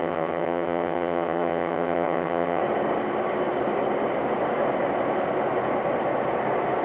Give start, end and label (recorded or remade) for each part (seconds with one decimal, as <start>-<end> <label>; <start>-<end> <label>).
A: 0.0-2.6 remade; 2.6-6.8 recorded